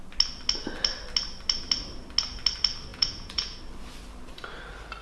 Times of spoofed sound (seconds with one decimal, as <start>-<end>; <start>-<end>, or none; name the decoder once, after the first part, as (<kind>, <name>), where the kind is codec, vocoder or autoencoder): 2.9-3.6 (vocoder, Vocos)